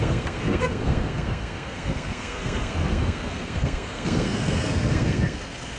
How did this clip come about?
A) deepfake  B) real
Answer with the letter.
A